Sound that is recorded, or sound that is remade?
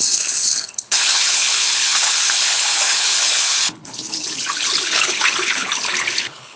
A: remade